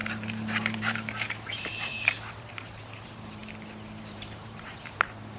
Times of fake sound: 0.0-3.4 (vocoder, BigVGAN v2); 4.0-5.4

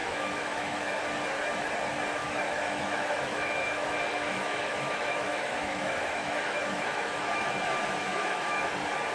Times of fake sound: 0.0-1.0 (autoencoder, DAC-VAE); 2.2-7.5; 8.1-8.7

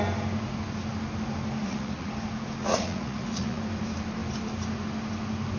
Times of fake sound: 1.6-2.1 (vocoder, Vocos); 2.6-3.6

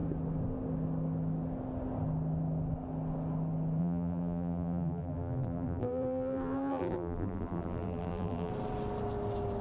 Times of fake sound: 3.8-8.5 (vocoder, BigVGAN v2)

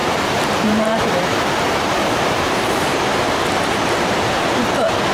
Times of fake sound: 0.0-2.8 (vocoder, BigVGAN v2)

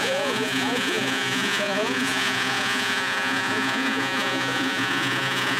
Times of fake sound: 0.0-5.6 (vocoder, Vocos)

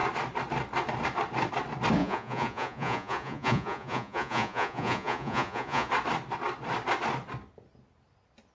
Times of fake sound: 2.0-5.9 (vocoder, Vocos)

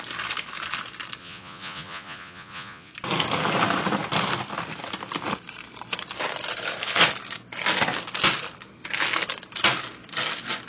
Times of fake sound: 1.2-2.9 (vocoder, Vocos)